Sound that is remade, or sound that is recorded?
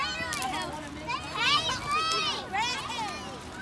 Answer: recorded